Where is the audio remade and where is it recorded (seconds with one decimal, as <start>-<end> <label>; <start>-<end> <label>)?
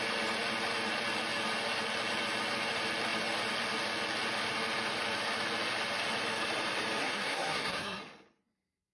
0.0-7.0 recorded; 7.0-8.0 remade; 8.0-8.9 recorded